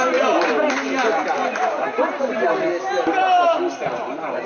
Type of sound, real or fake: real